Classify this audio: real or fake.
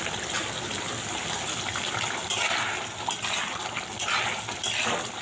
real